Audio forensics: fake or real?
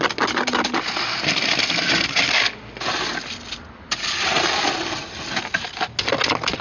real